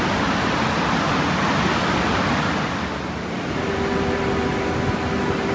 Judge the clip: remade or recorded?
recorded